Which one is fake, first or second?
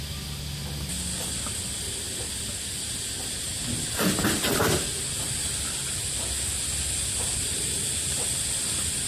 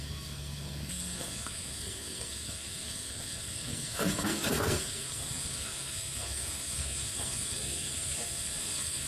second